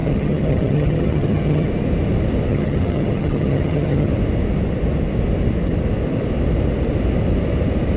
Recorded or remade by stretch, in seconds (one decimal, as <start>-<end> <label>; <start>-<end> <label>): 0.0-1.7 remade; 1.7-2.5 recorded; 2.5-4.1 remade; 4.1-8.0 recorded